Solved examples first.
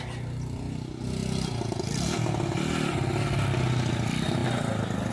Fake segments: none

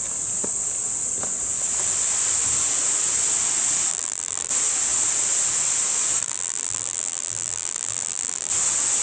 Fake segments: 3.9-4.5 (vocoder, BigVGAN v2); 6.2-8.5

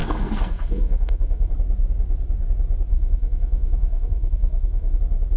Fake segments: 0.0-1.5 (codec, SNAC); 2.9-5.0

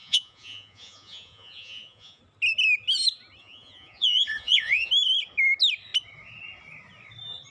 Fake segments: 0.0-2.2 (vocoder, Vocos); 3.4-4.9

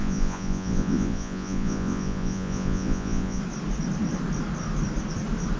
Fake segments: 0.0-3.4 (vocoder, Vocos)

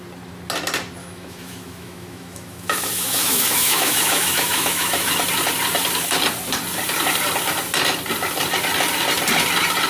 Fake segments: 1.0-5.1 (autoencoder, DAC-VAE)